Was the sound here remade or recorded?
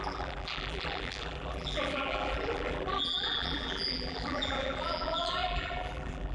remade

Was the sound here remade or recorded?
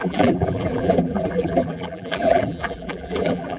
remade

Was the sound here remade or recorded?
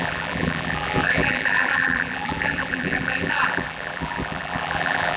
remade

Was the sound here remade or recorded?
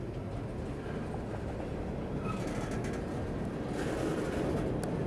recorded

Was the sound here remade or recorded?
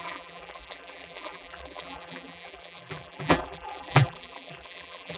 remade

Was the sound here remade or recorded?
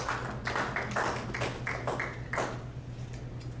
recorded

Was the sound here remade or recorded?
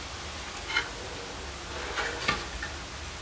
recorded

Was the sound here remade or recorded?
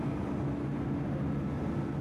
recorded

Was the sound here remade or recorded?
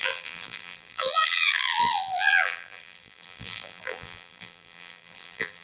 remade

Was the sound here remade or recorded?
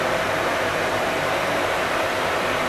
remade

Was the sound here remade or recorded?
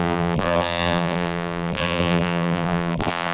remade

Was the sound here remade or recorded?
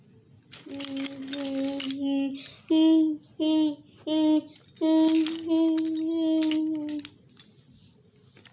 recorded